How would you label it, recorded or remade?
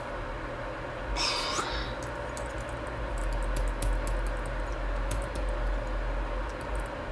recorded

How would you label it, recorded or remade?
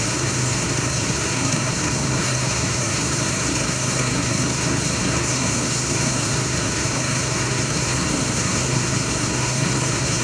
remade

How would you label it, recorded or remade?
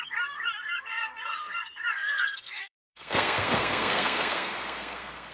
remade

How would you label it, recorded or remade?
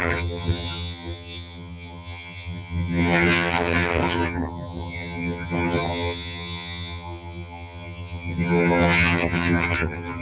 remade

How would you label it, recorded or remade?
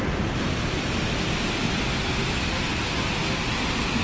recorded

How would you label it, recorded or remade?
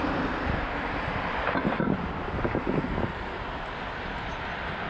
recorded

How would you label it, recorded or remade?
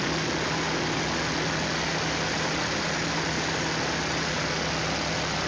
recorded